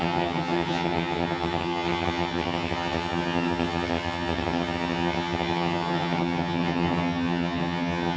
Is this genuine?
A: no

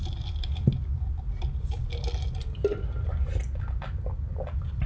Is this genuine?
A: yes